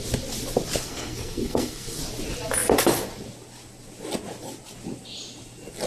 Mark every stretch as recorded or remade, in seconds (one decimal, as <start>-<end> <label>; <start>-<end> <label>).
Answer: 0.0-0.8 recorded; 0.8-2.0 remade; 2.0-5.9 recorded